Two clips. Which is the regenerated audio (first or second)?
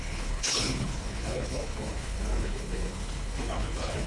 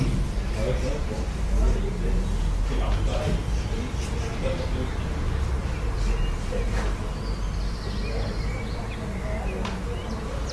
first